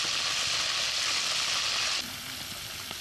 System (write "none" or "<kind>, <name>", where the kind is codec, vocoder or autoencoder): none